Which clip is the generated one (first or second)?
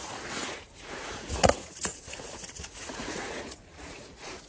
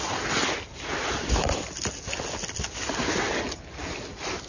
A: first